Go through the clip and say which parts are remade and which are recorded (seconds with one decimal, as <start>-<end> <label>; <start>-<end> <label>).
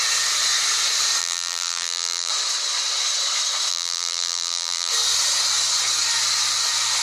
0.0-1.2 recorded; 1.2-2.3 remade; 2.3-3.7 recorded; 3.7-4.9 remade; 4.9-7.0 recorded